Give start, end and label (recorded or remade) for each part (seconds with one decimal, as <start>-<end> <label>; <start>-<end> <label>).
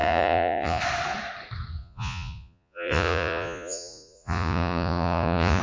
0.0-0.8 remade; 0.8-1.8 recorded; 1.8-5.6 remade